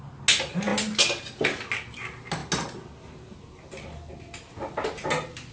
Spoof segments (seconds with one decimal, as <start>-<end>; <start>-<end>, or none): none